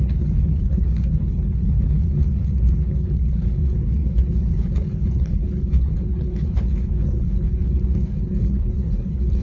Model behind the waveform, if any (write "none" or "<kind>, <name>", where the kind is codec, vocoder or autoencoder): codec, HILCodec